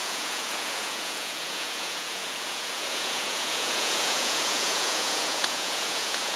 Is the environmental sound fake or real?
fake